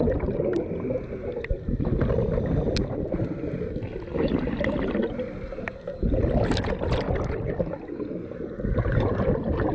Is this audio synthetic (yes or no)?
no